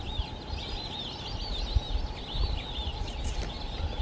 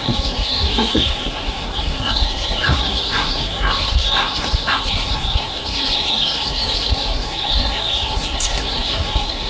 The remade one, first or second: second